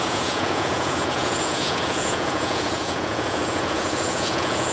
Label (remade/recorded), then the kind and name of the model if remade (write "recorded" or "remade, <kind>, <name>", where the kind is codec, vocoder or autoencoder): remade, vocoder, Vocos